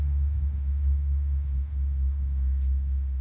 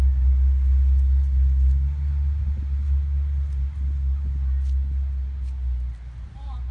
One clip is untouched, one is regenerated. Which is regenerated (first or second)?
first